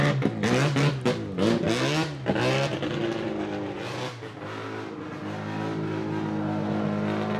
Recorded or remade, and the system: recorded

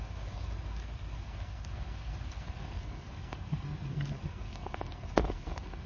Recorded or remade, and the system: remade, codec, SNAC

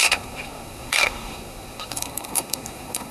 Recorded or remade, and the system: remade, codec, SNAC